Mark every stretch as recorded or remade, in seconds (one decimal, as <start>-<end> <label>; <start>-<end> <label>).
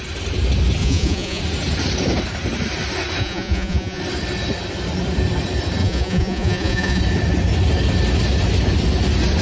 0.0-0.8 recorded; 0.8-1.4 remade; 1.4-3.2 recorded; 3.2-4.0 remade; 4.0-5.8 recorded; 5.8-7.0 remade; 7.0-9.4 recorded